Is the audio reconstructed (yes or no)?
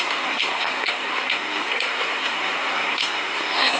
yes